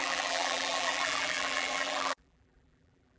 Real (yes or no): no